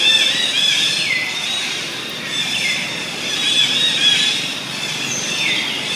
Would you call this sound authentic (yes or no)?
no